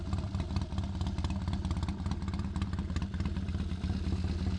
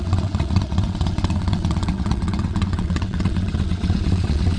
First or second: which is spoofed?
second